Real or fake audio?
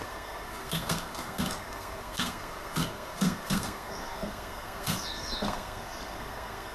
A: fake